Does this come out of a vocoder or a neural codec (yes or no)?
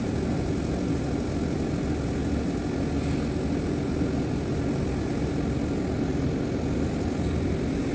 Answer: no